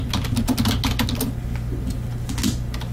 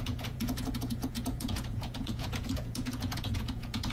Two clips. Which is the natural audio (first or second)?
first